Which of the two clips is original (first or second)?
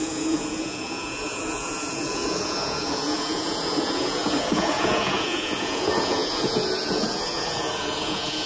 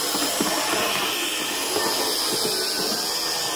second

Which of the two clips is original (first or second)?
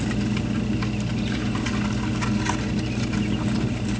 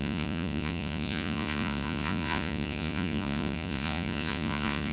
first